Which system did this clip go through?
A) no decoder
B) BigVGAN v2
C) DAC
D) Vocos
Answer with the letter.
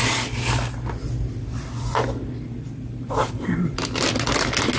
A